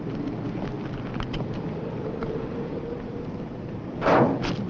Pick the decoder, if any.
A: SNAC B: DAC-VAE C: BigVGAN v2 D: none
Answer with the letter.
C